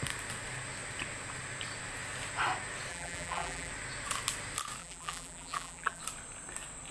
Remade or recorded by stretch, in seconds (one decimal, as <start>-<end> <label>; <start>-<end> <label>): 0.0-2.9 recorded; 2.9-3.7 remade; 3.7-4.8 recorded; 4.8-6.0 remade; 6.0-6.9 recorded